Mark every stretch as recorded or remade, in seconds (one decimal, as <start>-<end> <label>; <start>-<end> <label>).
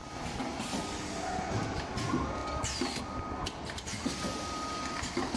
0.0-5.4 recorded